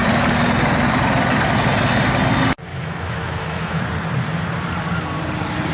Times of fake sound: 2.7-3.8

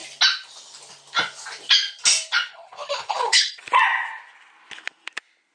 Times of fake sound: 2.5-3.5

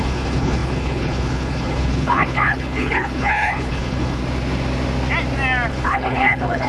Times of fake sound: 0.0-4.2; 5.7-6.7